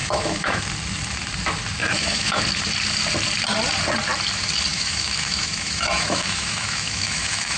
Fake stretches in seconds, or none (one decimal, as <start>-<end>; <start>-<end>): 0.0-0.6; 1.8-2.4; 4.7-7.6